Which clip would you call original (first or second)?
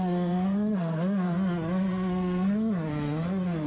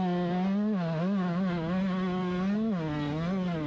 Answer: second